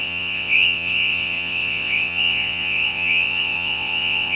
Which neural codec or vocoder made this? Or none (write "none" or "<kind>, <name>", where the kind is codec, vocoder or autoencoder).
vocoder, WaveNeXt